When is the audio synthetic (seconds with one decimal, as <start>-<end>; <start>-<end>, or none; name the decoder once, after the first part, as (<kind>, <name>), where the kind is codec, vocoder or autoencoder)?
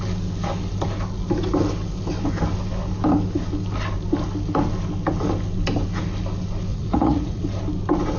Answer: 6.7-7.4 (vocoder, Vocos)